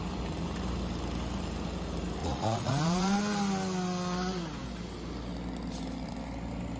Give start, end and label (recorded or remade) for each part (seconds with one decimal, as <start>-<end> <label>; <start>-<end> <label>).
0.0-2.2 recorded; 2.2-3.2 remade; 3.2-6.8 recorded

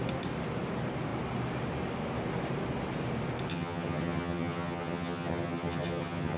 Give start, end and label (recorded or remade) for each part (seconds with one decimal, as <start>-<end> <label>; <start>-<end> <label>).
0.0-3.5 recorded; 3.5-6.4 remade